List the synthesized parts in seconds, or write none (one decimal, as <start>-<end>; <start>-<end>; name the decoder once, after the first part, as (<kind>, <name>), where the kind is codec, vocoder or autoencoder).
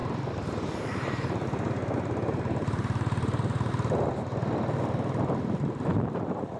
0.0-3.7 (vocoder, BigVGAN v2)